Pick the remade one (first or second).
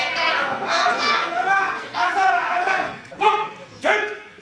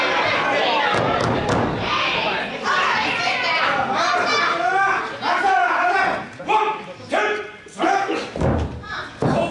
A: first